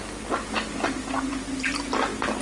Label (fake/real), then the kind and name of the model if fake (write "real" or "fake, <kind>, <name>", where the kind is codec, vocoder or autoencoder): real